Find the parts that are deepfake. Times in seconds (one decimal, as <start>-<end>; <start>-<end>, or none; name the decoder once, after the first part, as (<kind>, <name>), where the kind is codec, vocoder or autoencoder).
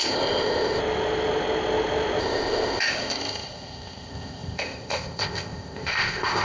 0.0-0.8 (codec, ZipCodec); 2.2-6.4